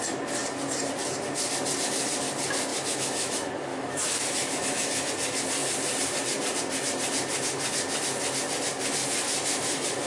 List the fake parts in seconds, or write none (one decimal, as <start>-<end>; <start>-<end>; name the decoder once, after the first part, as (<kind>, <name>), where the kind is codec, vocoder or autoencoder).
2.7-3.3 (autoencoder, DAC-VAE); 3.7-5.1